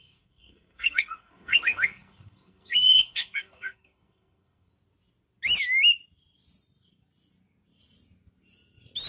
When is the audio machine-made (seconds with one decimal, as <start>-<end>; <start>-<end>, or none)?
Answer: 0.0-4.7